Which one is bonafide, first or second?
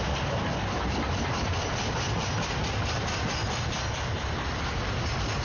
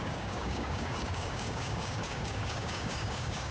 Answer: first